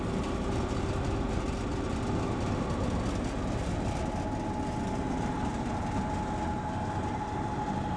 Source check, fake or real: real